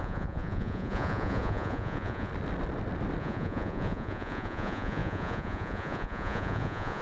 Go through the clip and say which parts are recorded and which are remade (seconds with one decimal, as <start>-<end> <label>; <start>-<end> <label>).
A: 0.0-2.3 remade; 2.3-3.2 recorded; 3.2-7.0 remade